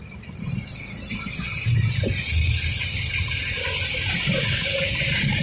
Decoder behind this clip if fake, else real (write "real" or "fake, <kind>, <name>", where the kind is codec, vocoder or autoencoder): real